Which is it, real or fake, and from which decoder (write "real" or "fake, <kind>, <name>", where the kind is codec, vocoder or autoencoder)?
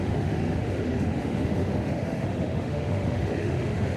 fake, autoencoder, DAC-VAE